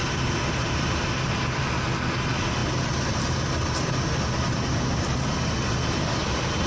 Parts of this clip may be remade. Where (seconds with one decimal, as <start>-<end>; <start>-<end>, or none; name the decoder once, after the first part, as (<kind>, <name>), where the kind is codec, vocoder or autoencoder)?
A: none